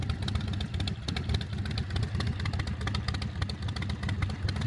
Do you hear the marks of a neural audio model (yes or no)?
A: no